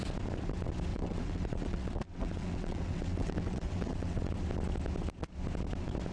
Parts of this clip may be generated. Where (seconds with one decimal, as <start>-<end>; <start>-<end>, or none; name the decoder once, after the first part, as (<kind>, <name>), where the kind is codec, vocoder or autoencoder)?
0.9-4.3 (vocoder, WaveNeXt)